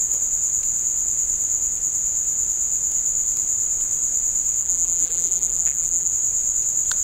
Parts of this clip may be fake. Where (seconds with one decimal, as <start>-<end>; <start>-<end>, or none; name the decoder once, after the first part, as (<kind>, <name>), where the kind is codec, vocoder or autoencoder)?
4.6-6.1 (vocoder, BigVGAN v2)